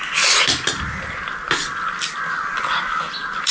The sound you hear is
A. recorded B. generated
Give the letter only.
A